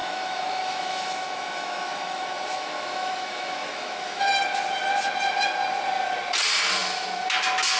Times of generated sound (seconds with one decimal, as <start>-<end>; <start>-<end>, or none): 0.0-4.2